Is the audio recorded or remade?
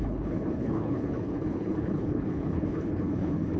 remade